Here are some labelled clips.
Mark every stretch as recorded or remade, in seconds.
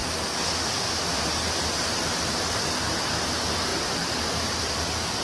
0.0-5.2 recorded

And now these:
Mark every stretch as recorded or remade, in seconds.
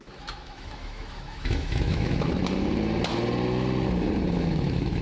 0.0-2.4 remade; 2.4-4.3 recorded; 4.3-5.0 remade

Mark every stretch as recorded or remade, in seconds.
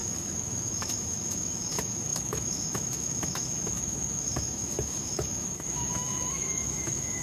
0.0-7.2 remade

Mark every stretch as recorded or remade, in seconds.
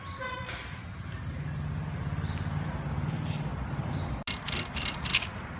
0.0-5.6 recorded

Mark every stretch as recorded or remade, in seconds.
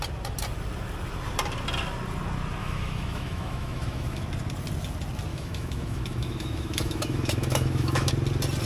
0.0-2.6 recorded; 2.6-4.2 remade; 4.2-5.3 recorded; 5.3-8.1 remade; 8.1-8.7 recorded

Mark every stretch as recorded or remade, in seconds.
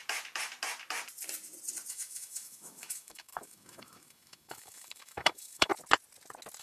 0.0-1.9 recorded; 1.9-5.7 remade; 5.7-6.6 recorded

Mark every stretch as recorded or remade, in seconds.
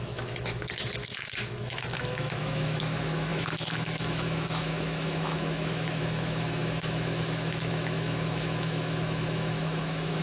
0.0-10.2 remade